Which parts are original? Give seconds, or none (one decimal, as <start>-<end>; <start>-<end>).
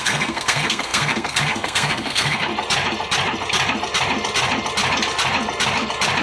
2.5-6.2